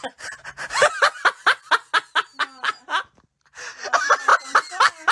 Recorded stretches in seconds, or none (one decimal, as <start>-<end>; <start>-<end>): 0.0-4.3